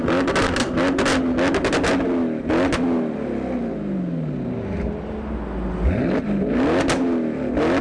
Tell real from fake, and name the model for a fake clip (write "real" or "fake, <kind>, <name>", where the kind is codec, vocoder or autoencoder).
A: real